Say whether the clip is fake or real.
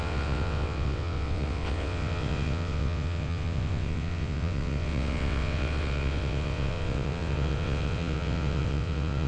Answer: fake